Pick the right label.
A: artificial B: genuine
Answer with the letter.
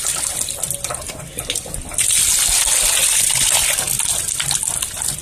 B